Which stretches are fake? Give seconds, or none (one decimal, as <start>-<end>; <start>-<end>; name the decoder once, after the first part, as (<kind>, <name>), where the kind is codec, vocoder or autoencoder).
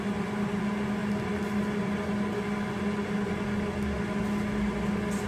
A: none